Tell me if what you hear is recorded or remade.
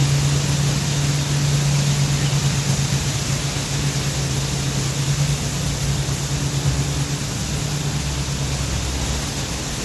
recorded